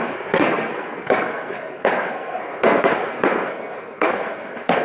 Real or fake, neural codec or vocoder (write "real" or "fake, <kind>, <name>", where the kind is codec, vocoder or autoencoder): fake, codec, SNAC